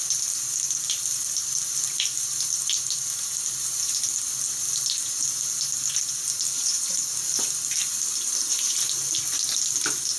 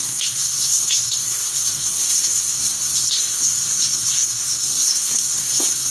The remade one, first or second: second